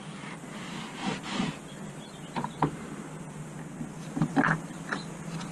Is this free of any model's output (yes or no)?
yes